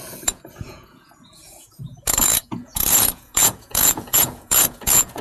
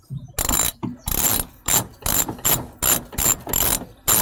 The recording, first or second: second